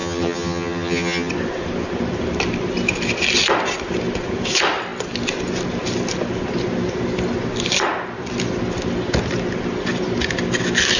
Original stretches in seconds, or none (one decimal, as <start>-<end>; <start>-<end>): 1.3-11.0